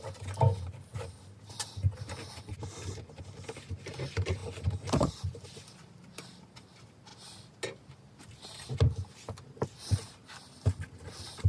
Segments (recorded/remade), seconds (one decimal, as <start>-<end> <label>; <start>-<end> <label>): 0.0-11.5 recorded